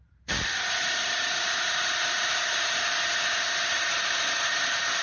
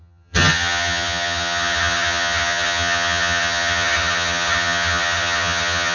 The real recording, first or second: first